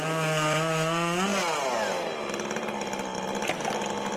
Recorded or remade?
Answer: recorded